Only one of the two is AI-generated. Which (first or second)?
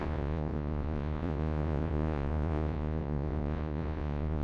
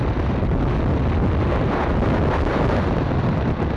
first